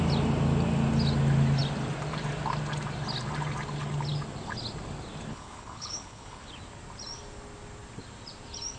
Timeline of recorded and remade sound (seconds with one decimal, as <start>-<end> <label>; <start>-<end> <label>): 0.0-5.3 recorded; 5.3-6.5 remade; 6.5-8.8 recorded